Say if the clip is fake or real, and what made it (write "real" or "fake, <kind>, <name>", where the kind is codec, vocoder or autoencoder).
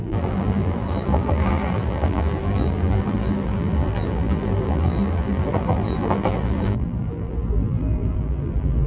fake, vocoder, BigVGAN v2